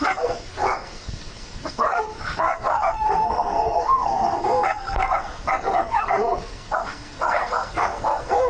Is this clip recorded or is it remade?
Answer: remade